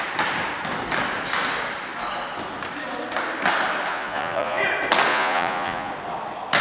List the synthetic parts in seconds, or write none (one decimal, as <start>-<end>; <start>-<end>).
3.9-4.6; 5.1-5.9